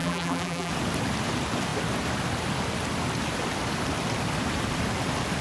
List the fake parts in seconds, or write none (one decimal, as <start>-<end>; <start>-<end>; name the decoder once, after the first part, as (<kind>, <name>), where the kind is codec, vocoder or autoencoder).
0.0-0.7 (vocoder, BigVGAN v2)